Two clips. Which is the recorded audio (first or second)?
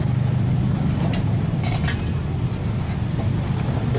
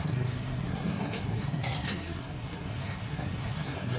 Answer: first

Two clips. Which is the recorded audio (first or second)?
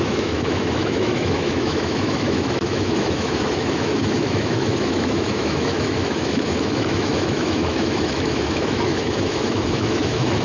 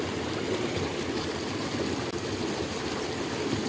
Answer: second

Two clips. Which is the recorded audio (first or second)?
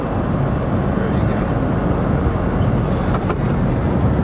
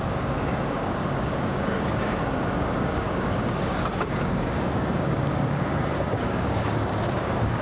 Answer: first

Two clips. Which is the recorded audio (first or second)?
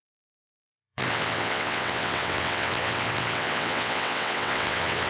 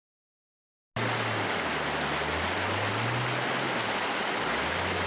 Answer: second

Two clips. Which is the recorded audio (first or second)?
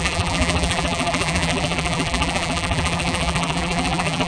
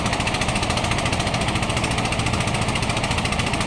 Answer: second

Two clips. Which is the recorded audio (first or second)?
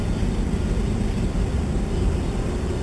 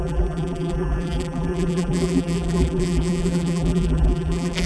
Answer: first